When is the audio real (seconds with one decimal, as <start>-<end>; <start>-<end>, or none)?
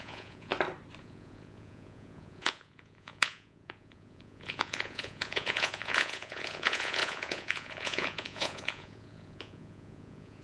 0.5-1.0